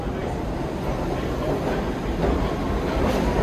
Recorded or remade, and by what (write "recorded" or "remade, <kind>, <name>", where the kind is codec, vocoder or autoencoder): recorded